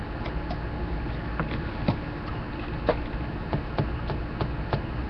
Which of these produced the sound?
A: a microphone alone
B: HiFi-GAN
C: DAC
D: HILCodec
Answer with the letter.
A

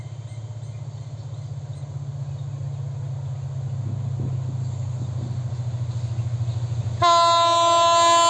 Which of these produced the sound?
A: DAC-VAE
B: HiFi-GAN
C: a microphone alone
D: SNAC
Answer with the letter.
C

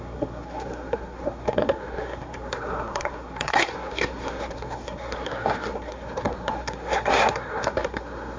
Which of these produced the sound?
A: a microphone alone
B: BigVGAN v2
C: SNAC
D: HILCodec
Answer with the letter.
C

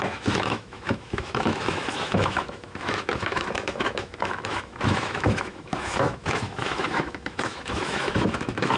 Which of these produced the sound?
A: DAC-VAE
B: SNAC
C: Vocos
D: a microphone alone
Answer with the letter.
A